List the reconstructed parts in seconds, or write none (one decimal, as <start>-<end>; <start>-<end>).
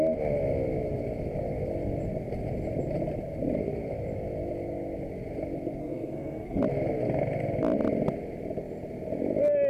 5.8-6.6